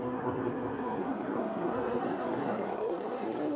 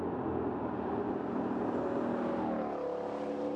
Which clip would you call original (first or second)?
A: second